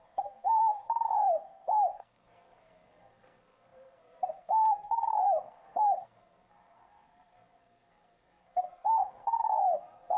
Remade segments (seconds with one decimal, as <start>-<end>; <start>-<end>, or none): 0.0-10.2